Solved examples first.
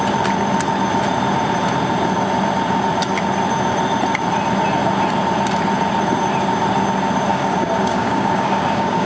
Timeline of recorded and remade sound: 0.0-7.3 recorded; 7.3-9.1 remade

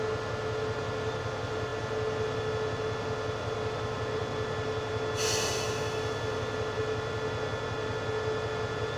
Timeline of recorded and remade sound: 0.0-9.0 recorded

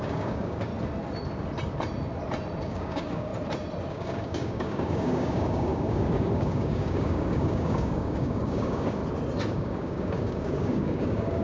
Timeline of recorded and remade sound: 0.0-0.7 remade; 0.7-2.6 recorded; 2.6-3.3 remade; 3.3-3.9 recorded; 3.9-9.0 remade; 9.0-9.5 recorded; 9.5-11.4 remade

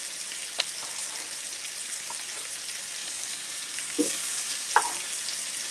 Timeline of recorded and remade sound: 0.0-3.0 recorded; 3.0-4.7 remade; 4.7-5.7 recorded

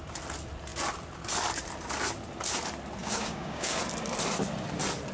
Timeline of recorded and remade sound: 0.0-3.0 recorded; 3.0-3.8 remade; 3.8-5.1 recorded

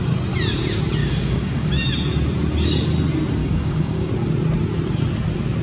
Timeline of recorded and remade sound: 0.0-1.0 recorded; 1.0-1.7 remade; 1.7-3.4 recorded; 3.4-4.1 remade; 4.1-5.6 recorded

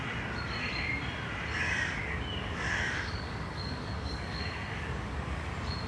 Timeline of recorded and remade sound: 0.0-2.0 recorded; 2.0-5.5 remade; 5.5-5.9 recorded

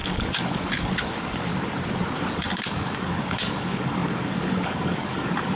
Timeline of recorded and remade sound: 0.0-1.5 remade; 1.5-2.3 recorded; 2.3-5.6 remade